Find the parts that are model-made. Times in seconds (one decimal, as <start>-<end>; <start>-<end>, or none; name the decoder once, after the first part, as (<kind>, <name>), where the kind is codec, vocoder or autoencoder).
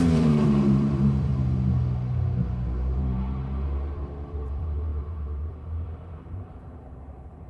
0.0-1.3 (vocoder, BigVGAN v2); 3.0-7.5